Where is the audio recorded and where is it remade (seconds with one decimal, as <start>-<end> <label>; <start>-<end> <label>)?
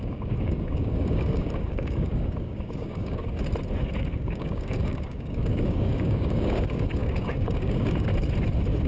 0.0-3.2 remade; 3.2-4.2 recorded; 4.2-8.1 remade; 8.1-8.9 recorded